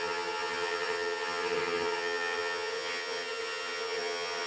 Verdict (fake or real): fake